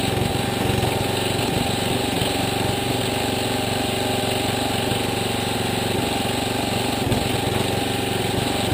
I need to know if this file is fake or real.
real